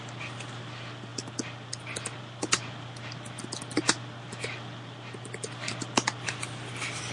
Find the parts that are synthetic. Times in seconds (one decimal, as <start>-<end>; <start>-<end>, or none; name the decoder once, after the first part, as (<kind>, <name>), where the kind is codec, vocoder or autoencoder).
none

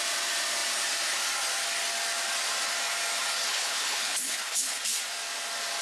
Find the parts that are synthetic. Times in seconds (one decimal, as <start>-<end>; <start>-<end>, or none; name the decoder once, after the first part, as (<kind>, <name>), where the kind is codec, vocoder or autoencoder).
3.5-4.8 (codec, HILCodec)

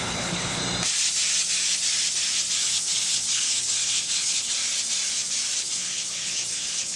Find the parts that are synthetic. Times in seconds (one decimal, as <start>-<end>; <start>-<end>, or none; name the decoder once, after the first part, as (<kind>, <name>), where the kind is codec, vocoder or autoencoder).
0.0-0.6 (codec, HILCodec); 2.6-4.5; 5.6-7.0

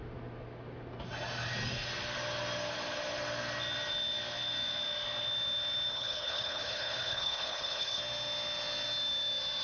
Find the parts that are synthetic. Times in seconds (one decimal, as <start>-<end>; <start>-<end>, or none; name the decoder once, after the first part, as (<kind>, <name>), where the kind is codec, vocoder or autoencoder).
5.9-8.0 (codec, HILCodec)

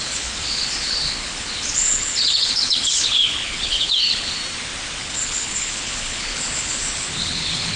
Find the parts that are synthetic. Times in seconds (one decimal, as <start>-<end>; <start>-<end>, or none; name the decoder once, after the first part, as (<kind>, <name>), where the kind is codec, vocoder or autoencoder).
0.0-4.4 (codec, HILCodec); 5.0-7.8